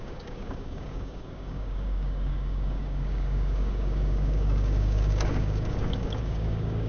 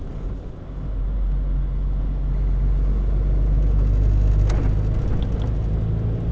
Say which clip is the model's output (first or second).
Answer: first